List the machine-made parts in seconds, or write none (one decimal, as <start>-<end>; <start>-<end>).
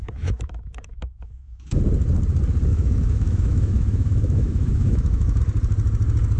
0.0-1.8; 2.7-5.4